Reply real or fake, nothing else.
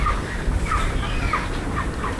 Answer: real